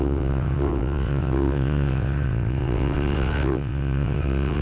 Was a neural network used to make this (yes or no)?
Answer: yes